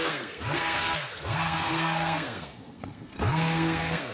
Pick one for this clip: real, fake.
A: fake